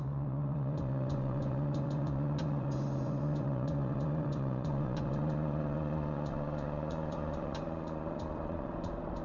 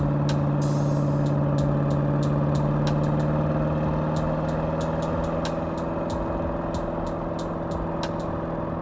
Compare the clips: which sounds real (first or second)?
second